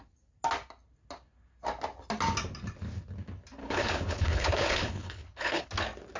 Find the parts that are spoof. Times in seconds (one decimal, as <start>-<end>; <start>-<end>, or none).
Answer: 3.6-5.7